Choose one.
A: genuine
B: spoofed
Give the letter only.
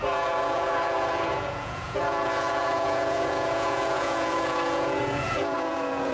B